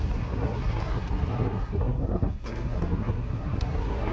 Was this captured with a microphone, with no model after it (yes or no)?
no